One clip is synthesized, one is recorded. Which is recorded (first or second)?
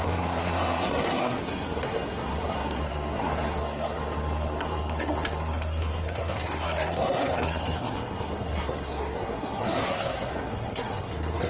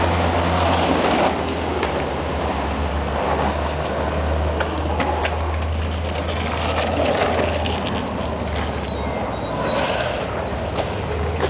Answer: second